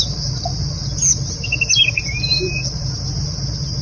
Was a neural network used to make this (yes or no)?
no